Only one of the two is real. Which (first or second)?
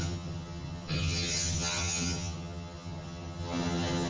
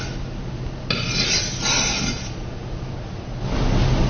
second